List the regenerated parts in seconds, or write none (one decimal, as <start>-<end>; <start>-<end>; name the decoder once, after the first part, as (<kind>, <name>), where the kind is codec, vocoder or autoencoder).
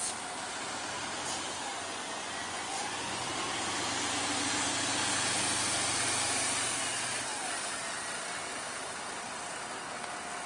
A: 1.7-3.2 (vocoder, Vocos)